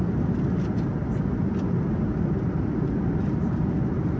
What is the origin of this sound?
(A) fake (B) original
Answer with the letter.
B